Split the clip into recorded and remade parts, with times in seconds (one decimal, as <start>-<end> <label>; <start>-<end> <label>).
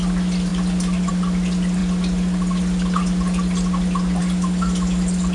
0.0-5.3 recorded